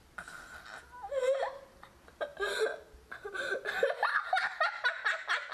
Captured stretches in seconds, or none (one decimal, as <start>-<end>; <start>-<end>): 0.0-5.5

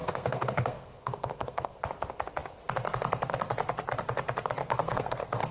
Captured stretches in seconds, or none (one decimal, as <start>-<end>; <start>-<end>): 1.8-4.6

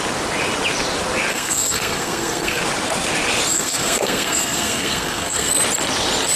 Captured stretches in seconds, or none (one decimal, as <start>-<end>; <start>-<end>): 0.0-1.3; 2.6-3.5; 5.5-6.4

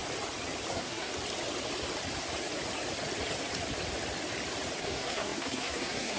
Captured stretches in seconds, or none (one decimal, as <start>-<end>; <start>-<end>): 0.0-0.7; 1.1-4.8

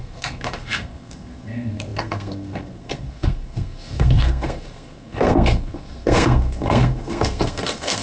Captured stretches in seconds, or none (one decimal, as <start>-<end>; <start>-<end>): none